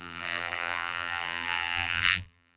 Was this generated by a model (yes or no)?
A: yes